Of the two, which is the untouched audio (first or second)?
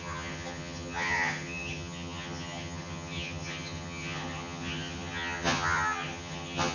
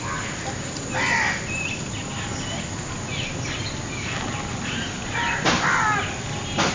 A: second